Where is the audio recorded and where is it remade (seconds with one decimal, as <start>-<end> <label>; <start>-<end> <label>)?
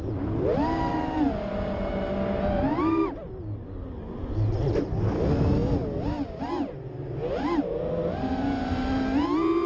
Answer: 0.0-9.7 recorded